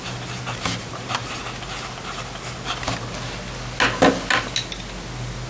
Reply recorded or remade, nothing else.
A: recorded